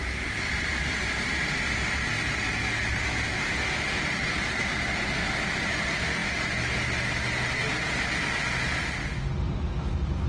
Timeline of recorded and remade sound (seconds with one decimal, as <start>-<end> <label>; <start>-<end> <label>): 0.0-10.3 recorded